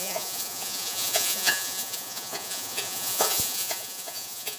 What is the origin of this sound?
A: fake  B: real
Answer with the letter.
A